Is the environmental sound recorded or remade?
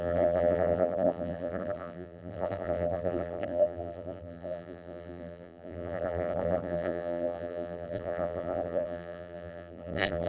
remade